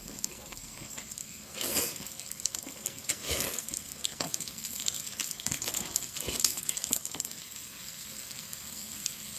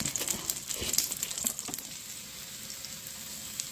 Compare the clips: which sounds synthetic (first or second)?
first